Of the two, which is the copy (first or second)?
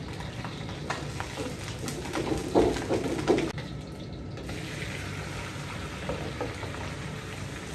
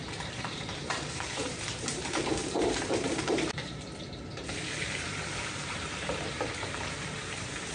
second